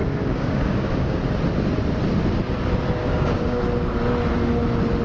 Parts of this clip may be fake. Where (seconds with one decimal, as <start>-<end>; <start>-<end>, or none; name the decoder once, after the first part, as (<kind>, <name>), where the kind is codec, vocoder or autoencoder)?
0.0-1.2 (codec, DAC); 3.0-3.6